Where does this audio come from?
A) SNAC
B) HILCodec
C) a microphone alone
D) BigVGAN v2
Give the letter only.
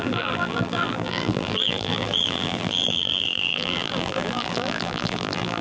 D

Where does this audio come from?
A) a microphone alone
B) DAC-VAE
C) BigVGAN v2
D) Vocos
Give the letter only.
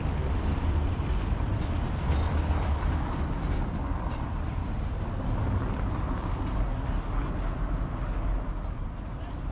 A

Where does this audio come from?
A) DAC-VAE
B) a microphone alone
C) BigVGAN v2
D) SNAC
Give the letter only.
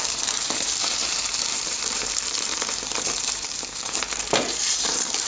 C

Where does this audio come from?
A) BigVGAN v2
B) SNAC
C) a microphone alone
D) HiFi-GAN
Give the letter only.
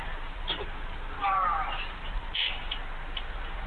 A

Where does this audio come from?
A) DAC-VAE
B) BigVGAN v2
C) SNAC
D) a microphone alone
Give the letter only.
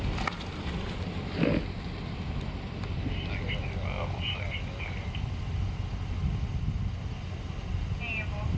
D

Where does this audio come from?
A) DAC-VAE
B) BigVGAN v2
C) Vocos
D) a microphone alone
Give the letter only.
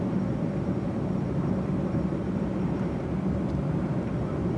B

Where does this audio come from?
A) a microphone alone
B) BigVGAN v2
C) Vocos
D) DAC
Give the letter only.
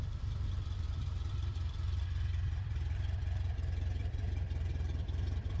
B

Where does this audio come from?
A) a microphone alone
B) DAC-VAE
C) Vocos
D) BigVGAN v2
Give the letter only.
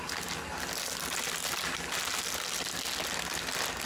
A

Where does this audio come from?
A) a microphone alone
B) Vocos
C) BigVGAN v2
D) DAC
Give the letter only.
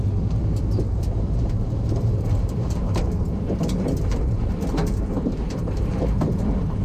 C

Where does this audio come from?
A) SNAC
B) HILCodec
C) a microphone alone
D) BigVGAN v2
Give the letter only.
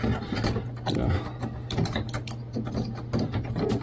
C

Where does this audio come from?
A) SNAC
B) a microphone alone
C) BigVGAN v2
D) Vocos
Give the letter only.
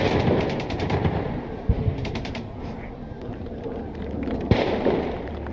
C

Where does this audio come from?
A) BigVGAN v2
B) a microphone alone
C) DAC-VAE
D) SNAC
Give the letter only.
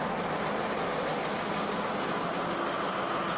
B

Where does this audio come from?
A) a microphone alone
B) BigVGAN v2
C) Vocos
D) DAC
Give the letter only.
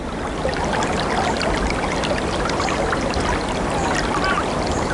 A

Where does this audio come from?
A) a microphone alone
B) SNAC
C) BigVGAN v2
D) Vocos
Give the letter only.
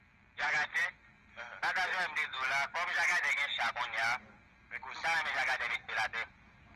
A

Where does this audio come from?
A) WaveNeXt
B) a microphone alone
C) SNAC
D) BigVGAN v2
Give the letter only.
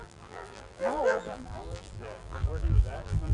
D